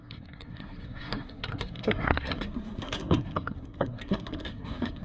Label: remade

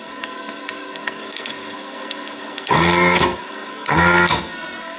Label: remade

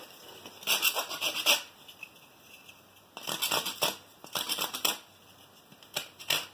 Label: recorded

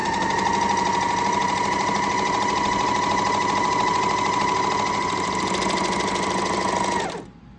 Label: recorded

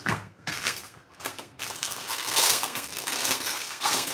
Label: remade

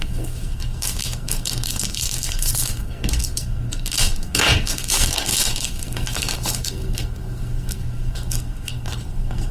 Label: remade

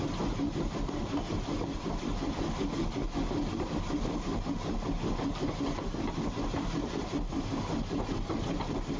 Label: recorded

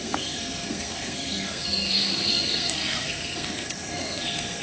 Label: remade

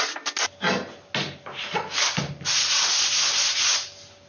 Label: recorded